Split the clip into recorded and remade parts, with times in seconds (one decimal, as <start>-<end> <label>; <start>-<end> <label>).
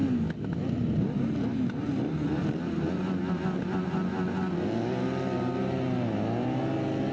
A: 0.0-7.1 recorded